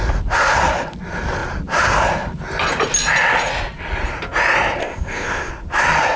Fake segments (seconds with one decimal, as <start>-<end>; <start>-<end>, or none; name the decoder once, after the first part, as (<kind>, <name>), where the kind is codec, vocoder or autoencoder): 4.8-5.5 (codec, ZipCodec)